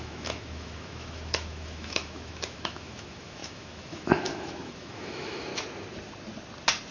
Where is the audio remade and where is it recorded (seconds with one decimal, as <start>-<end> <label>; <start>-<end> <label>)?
0.0-5.5 remade; 5.5-6.9 recorded